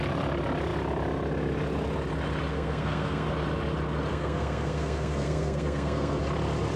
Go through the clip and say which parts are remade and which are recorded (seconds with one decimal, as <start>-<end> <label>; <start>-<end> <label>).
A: 0.0-2.5 recorded; 2.5-3.3 remade; 3.3-4.1 recorded; 4.1-6.2 remade; 6.2-6.8 recorded